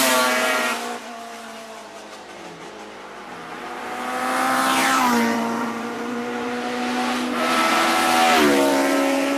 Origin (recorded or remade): remade